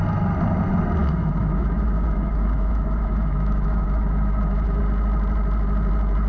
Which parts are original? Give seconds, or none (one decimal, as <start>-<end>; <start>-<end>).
0.0-1.0; 4.8-6.3